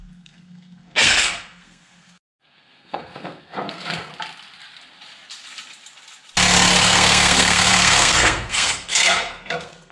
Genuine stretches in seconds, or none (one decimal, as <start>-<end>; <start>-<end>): 4.1-6.8